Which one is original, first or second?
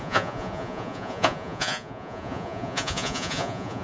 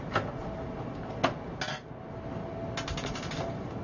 second